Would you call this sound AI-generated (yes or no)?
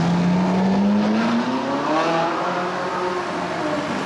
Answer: no